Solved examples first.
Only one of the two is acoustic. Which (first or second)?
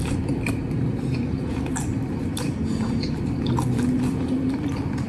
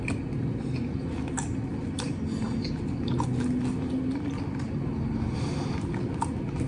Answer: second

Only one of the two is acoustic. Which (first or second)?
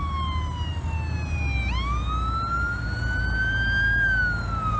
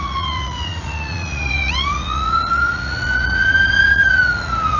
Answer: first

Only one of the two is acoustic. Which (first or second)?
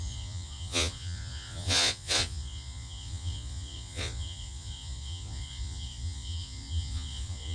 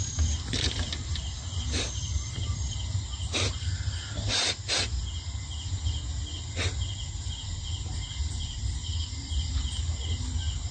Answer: second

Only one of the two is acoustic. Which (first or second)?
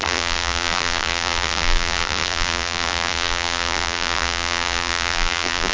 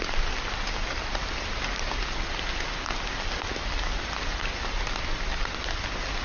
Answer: second